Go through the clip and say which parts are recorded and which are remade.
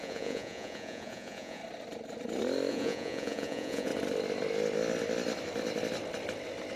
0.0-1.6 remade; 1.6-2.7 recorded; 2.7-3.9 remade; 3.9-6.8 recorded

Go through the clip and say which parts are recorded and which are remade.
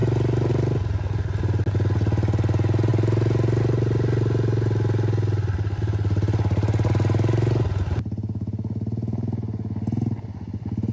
0.0-10.9 recorded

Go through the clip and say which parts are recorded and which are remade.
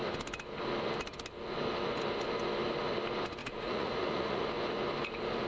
0.0-3.4 recorded; 3.4-4.4 remade; 4.4-5.5 recorded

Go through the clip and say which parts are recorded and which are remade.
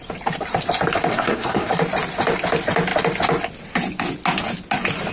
0.0-1.1 recorded; 1.1-1.7 remade; 1.7-5.1 recorded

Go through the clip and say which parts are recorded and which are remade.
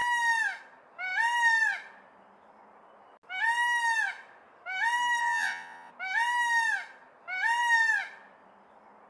0.0-5.2 recorded; 5.2-5.9 remade; 5.9-9.1 recorded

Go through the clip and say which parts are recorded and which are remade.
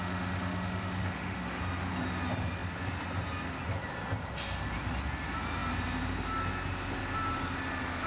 0.0-1.6 remade; 1.6-8.1 recorded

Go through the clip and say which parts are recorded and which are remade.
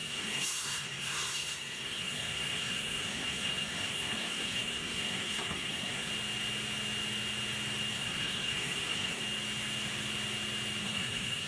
0.0-6.1 remade; 6.1-7.9 recorded; 7.9-9.2 remade; 9.2-10.8 recorded; 10.8-11.5 remade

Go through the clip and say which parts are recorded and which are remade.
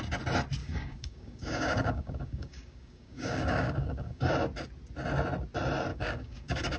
0.0-0.6 recorded; 0.6-4.3 remade; 4.3-5.9 recorded; 5.9-6.8 remade